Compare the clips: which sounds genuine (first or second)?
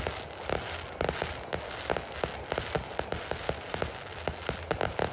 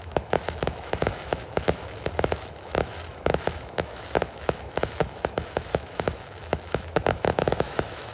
first